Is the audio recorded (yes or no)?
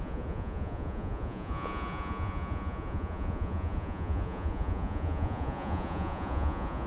no